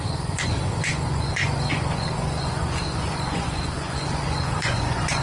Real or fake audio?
fake